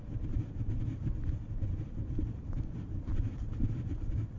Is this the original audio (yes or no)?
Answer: yes